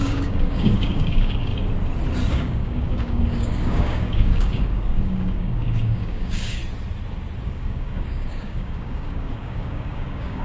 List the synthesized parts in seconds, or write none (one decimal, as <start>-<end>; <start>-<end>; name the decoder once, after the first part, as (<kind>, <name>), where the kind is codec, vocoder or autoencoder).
0.0-1.5 (codec, DAC); 2.3-6.6; 7.4-10.4